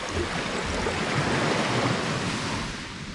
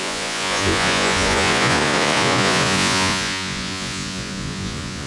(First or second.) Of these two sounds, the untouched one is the first